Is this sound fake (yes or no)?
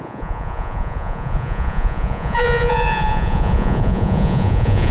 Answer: yes